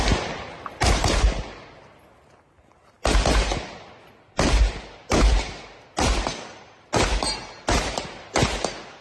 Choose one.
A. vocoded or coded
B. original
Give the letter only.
B